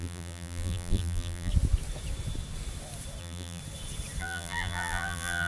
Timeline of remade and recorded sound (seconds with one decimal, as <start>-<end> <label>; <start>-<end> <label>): 0.0-1.5 remade; 1.5-3.2 recorded; 3.2-3.6 remade; 3.6-4.2 recorded; 4.2-5.5 remade